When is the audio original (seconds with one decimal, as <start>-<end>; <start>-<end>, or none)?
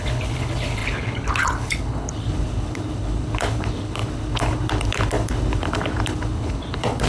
none